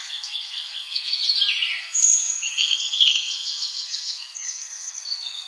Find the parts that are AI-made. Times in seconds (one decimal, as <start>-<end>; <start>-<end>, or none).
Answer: 0.0-1.2; 1.8-5.5